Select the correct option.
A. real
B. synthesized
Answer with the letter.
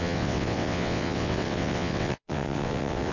B